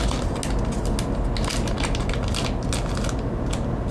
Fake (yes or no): no